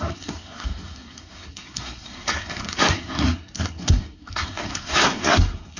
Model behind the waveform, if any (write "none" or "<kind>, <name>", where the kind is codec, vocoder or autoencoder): codec, SNAC